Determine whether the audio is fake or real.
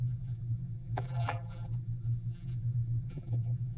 fake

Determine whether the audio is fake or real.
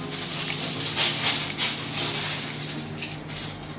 real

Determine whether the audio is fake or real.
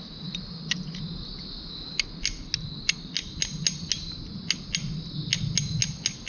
real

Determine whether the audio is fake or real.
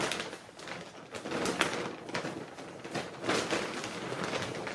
real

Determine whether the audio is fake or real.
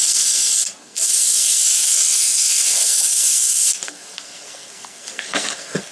fake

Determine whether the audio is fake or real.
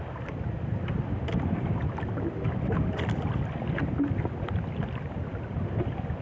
real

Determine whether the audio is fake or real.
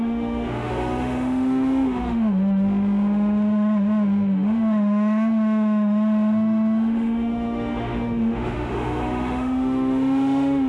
fake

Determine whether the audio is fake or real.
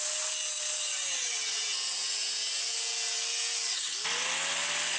real